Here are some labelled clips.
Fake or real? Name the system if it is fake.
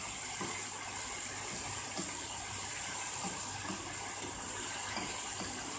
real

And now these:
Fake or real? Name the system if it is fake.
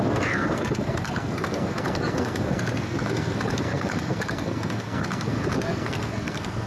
fake, codec, SNAC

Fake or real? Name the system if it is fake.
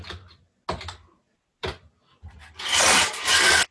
real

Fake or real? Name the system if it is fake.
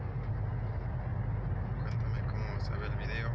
real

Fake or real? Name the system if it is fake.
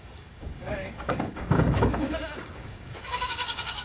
fake, codec, DAC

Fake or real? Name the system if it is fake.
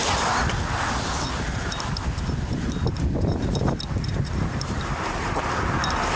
real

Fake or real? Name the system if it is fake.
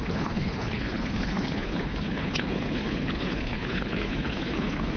fake, codec, HILCodec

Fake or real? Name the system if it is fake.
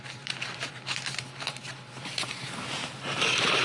fake, vocoder, BigVGAN v2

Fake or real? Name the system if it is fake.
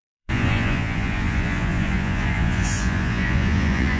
fake, vocoder, Vocos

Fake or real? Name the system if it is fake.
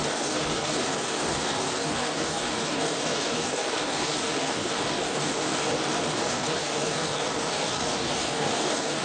fake, codec, DAC